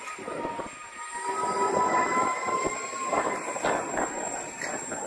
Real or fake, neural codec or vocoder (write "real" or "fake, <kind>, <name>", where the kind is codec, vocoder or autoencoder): real